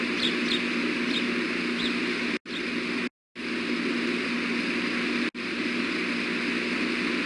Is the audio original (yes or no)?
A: yes